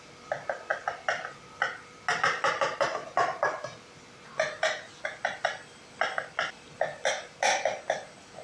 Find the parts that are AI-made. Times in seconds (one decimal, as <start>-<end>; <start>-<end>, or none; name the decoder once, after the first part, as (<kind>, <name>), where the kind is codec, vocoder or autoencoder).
none